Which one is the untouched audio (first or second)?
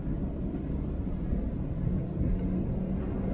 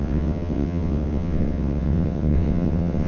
first